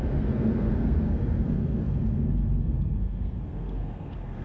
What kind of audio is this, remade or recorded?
remade